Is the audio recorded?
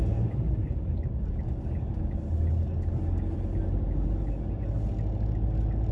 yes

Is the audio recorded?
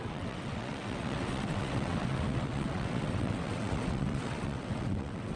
no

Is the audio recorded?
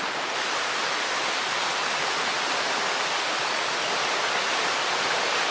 yes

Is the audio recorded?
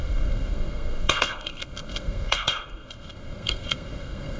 no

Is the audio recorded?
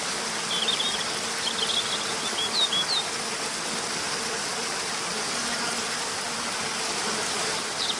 yes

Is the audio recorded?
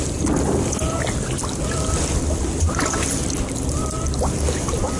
no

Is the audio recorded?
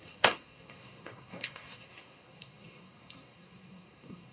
no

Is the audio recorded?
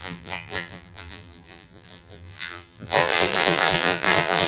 no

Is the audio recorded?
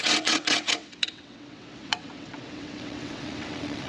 no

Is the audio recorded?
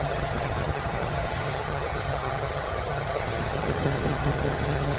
no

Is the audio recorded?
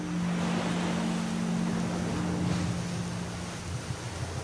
yes